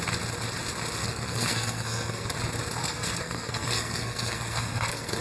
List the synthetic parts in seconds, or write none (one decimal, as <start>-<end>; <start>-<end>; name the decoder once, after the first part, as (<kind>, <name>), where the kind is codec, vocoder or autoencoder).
1.0-2.3 (codec, SNAC); 2.8-5.2